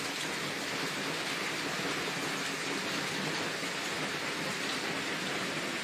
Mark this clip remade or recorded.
recorded